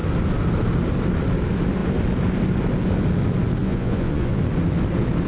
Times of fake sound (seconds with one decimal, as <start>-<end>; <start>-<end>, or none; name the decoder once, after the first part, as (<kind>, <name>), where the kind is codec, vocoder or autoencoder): 3.6-4.4 (vocoder, Vocos)